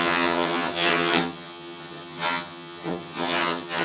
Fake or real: fake